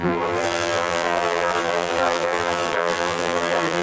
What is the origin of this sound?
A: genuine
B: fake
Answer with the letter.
B